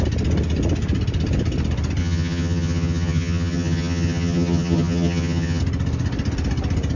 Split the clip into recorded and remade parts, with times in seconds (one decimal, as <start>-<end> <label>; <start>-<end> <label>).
0.0-2.0 recorded; 2.0-5.6 remade; 5.6-7.0 recorded